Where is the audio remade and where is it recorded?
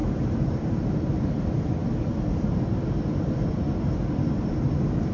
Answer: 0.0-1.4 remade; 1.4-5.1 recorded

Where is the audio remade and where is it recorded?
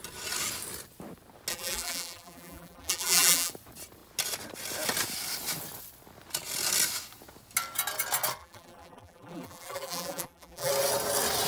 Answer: 0.0-1.5 recorded; 1.5-3.5 remade; 3.5-8.4 recorded; 8.4-10.7 remade; 10.7-11.5 recorded